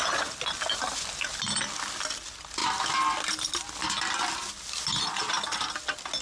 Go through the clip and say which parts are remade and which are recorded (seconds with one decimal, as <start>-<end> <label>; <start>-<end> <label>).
0.0-6.2 recorded